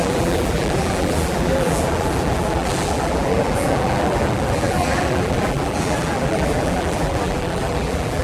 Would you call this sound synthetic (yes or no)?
yes